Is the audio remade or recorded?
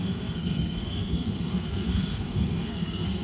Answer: remade